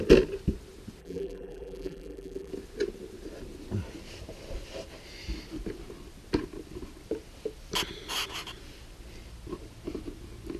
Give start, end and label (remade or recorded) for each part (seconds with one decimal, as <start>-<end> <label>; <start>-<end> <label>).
0.0-1.0 recorded; 1.0-2.5 remade; 2.5-10.6 recorded